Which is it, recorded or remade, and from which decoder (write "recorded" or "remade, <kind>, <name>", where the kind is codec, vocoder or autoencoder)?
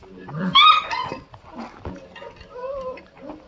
recorded